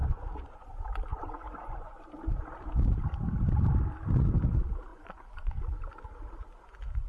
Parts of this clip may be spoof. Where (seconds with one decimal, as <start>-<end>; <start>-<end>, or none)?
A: 0.0-0.7; 1.1-2.0; 4.9-5.6

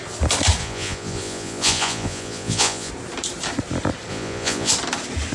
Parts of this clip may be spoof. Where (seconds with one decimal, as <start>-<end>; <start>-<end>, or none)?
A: 0.6-2.9; 4.1-4.7

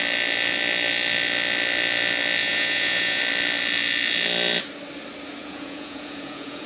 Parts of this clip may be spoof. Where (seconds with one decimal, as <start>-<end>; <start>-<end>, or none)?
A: 2.4-3.2; 5.4-6.7